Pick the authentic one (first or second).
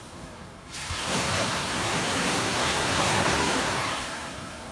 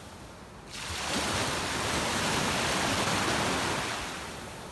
second